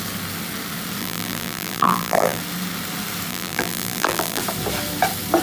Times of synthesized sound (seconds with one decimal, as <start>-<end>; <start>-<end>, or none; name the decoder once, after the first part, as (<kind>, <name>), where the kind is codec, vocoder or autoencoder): 1.0-2.4 (vocoder, BigVGAN v2); 3.3-4.4

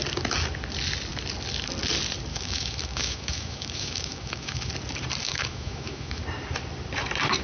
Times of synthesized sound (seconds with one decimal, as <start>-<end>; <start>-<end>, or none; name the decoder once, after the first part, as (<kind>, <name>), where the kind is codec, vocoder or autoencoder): 2.3-4.7 (autoencoder, DAC-VAE); 5.2-6.2

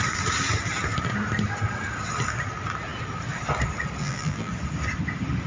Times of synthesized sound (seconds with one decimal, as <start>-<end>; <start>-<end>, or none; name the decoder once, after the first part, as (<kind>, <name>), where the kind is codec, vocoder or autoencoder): 4.0-4.5 (vocoder, BigVGAN v2)

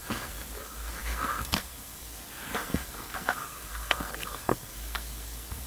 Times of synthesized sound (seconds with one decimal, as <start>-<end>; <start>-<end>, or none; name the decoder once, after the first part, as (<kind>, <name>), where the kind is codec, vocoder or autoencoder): 0.0-5.7 (codec, SNAC)

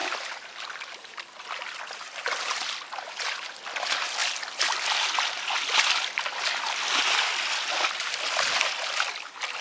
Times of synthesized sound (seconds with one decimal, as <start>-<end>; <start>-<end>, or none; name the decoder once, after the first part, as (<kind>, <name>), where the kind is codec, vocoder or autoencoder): none

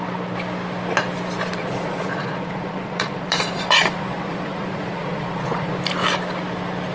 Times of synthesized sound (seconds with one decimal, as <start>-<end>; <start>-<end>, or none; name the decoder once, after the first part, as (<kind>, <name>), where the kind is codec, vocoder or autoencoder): 1.6-5.7 (vocoder, Vocos)